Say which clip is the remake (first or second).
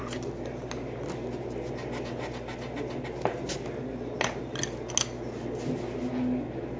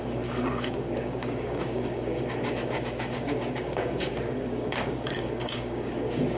second